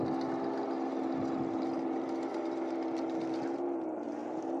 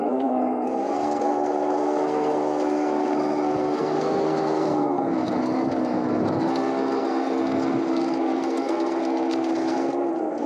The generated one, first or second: second